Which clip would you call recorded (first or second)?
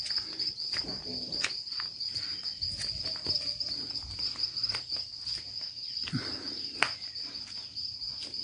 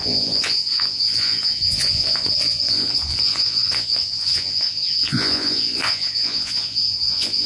first